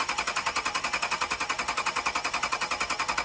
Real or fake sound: real